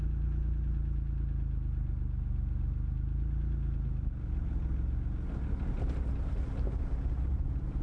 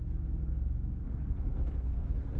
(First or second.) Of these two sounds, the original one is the first